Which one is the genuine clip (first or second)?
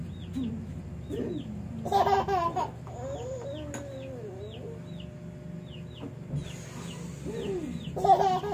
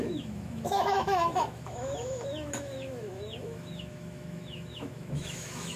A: first